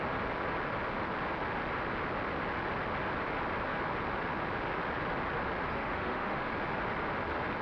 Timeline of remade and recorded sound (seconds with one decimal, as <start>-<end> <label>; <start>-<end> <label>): 0.0-5.7 recorded; 5.7-6.5 remade; 6.5-7.6 recorded